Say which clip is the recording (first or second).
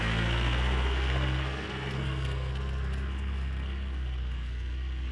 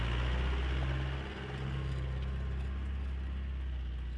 second